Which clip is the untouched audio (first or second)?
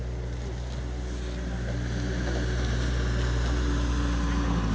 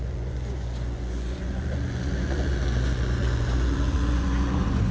first